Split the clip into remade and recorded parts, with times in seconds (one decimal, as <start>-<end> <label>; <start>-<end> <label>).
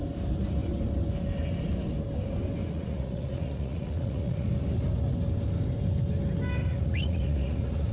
0.0-2.6 recorded; 2.6-4.5 remade; 4.5-6.6 recorded; 6.6-7.9 remade